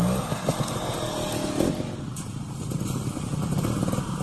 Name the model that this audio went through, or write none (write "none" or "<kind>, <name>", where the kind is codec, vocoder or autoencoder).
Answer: none